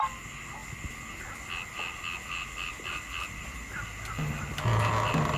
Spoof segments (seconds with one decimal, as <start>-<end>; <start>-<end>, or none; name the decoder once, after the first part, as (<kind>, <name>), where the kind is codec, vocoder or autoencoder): none